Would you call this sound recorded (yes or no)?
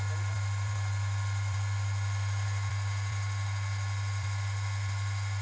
yes